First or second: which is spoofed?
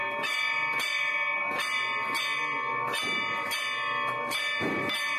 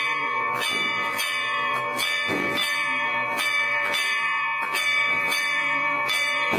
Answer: second